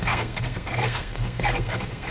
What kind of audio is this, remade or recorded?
remade